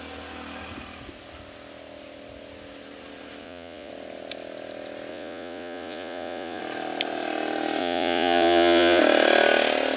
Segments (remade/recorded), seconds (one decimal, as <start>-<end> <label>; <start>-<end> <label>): 0.0-3.4 recorded; 3.4-3.9 remade; 3.9-5.1 recorded; 5.1-6.6 remade; 6.6-7.8 recorded; 7.8-9.0 remade; 9.0-10.0 recorded